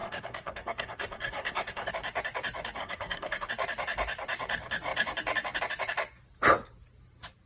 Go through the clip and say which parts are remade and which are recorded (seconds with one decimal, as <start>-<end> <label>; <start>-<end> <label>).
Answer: 0.0-1.9 remade; 1.9-2.8 recorded; 2.8-3.5 remade; 3.5-7.5 recorded